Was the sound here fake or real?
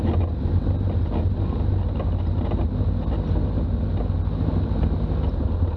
real